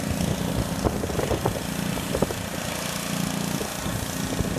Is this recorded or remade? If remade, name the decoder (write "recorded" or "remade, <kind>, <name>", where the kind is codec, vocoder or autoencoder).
recorded